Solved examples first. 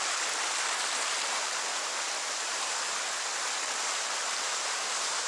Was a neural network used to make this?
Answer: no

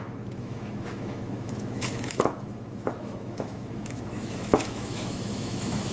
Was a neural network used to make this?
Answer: yes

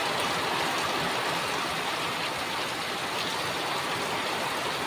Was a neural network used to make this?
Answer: no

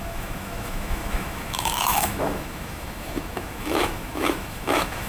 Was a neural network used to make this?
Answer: yes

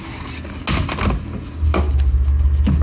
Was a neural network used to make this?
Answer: no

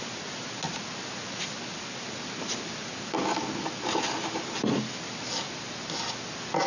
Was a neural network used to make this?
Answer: no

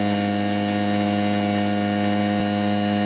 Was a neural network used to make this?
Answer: no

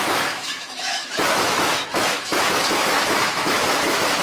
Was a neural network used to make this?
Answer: yes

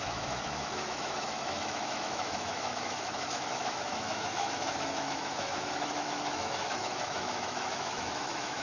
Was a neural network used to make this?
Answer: yes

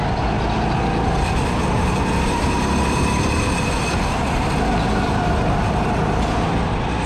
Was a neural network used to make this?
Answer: no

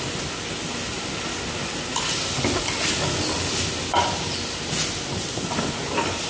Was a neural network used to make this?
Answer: no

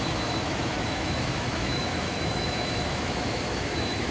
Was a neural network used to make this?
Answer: yes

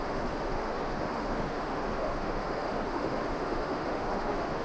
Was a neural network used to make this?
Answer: yes